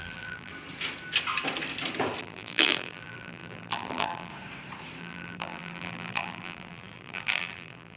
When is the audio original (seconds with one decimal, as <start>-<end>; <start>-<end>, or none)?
0.5-2.2; 4.3-5.0